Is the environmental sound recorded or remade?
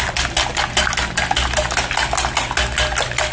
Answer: recorded